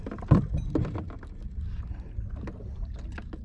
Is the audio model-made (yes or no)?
no